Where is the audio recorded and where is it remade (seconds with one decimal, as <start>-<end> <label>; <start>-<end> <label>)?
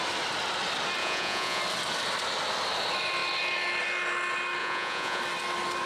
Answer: 0.0-1.0 recorded; 1.0-1.6 remade; 1.6-4.6 recorded; 4.6-5.2 remade; 5.2-5.9 recorded